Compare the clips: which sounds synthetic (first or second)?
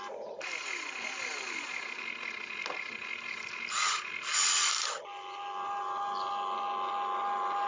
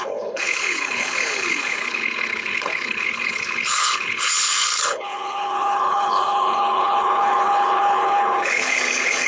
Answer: second